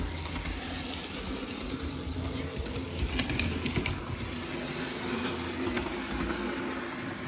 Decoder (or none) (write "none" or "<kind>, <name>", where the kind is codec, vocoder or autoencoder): none